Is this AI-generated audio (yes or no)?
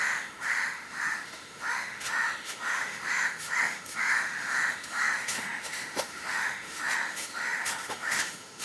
yes